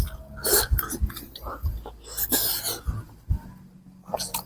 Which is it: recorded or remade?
recorded